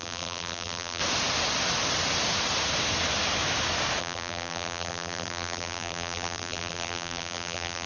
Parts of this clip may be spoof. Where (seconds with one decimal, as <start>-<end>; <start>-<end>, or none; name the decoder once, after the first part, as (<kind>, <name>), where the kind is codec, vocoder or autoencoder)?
0.0-1.0 (vocoder, BigVGAN v2); 4.0-7.9